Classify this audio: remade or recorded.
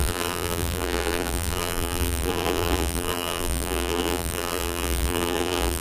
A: remade